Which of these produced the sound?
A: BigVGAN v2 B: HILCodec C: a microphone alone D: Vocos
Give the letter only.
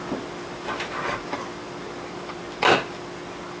C